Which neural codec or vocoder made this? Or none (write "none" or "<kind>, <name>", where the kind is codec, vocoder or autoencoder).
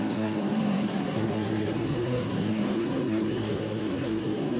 codec, SNAC